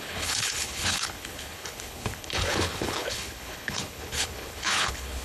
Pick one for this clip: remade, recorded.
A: remade